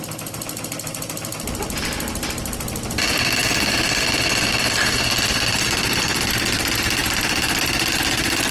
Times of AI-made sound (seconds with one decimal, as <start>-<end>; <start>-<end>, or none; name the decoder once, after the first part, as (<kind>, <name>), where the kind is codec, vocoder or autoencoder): none